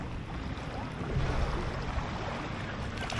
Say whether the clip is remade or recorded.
recorded